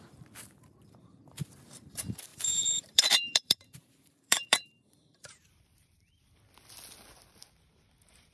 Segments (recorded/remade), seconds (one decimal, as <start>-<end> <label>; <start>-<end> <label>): 0.0-2.3 recorded; 2.3-6.0 remade; 6.0-8.3 recorded